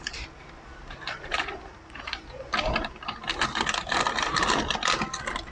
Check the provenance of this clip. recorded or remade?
recorded